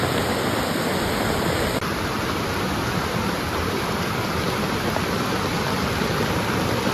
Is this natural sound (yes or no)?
no